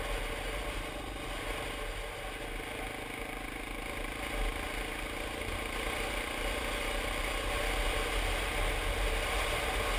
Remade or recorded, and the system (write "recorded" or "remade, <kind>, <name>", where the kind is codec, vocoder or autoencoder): recorded